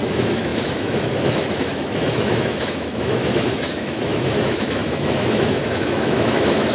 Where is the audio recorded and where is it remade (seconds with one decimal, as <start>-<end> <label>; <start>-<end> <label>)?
0.0-6.7 remade